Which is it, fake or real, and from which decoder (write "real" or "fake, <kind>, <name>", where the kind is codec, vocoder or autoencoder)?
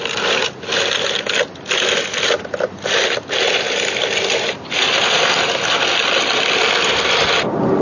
real